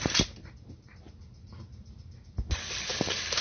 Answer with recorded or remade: recorded